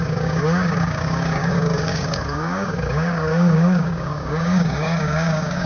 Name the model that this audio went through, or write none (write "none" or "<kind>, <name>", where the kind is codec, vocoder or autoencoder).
codec, DAC